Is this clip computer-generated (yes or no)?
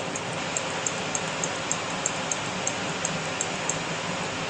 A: no